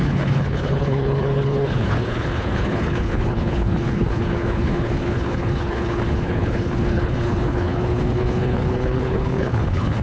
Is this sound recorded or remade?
remade